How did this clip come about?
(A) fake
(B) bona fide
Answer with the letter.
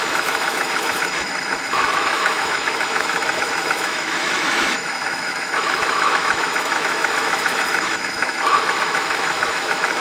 A